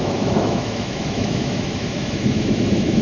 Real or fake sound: fake